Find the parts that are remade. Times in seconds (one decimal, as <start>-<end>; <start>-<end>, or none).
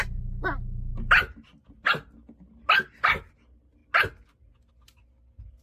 none